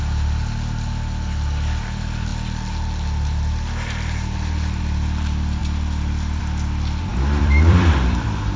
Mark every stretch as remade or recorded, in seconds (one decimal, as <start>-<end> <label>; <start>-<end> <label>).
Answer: 0.0-5.6 recorded; 5.6-6.4 remade; 6.4-7.1 recorded; 7.1-8.6 remade